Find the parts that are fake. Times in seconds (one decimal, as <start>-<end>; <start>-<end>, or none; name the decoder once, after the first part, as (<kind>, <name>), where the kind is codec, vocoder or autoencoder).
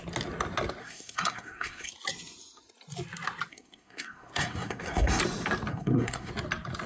0.8-1.9 (codec, SNAC); 3.5-5.2; 5.7-6.3